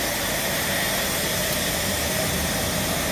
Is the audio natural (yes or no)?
yes